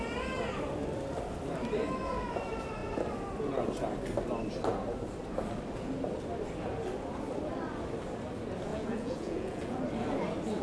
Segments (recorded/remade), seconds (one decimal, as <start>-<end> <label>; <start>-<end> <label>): 0.0-8.7 recorded; 8.7-9.8 remade; 9.8-10.6 recorded